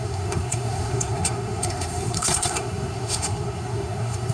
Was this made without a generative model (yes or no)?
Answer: no